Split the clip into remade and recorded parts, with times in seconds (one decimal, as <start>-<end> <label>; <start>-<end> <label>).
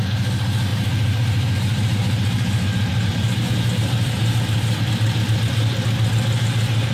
0.0-0.7 recorded; 0.7-4.8 remade; 4.8-6.9 recorded